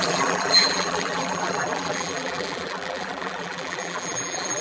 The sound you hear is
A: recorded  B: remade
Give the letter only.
B